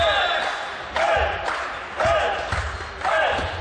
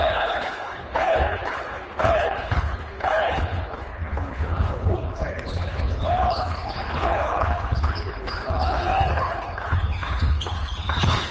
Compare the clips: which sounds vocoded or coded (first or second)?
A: second